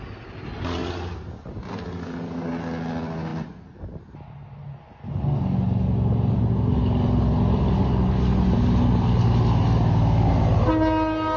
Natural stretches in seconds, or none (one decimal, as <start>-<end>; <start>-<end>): 0.0-11.4